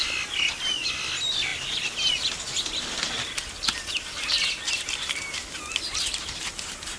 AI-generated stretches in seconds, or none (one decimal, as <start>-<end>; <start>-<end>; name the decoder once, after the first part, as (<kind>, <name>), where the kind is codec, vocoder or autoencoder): none